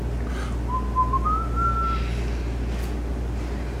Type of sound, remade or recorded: recorded